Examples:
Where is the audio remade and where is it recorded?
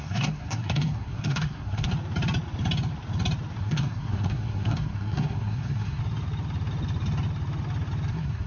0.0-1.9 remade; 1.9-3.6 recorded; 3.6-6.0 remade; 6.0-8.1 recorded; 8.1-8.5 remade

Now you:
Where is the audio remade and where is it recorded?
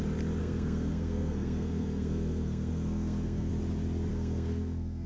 0.0-0.4 recorded; 0.4-3.5 remade; 3.5-4.1 recorded; 4.1-5.1 remade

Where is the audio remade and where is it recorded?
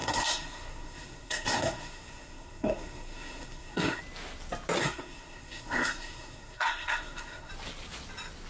0.0-4.0 remade; 4.0-4.8 recorded; 4.8-7.5 remade; 7.5-8.5 recorded